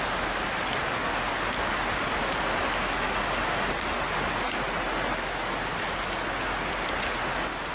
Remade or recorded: recorded